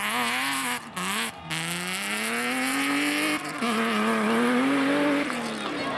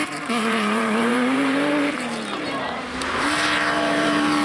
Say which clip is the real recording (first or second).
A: first